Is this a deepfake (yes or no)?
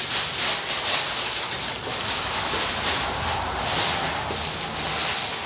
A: no